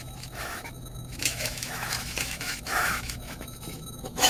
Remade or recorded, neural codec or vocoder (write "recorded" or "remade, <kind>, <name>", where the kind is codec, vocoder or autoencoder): remade, autoencoder, DAC-VAE